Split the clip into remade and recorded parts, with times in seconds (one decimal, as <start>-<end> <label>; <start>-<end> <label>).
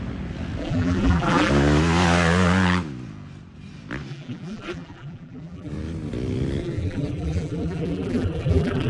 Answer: 0.0-0.6 recorded; 0.6-1.5 remade; 1.5-4.1 recorded; 4.1-5.7 remade; 5.7-6.6 recorded; 6.6-8.9 remade